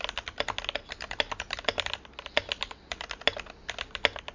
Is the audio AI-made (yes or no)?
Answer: no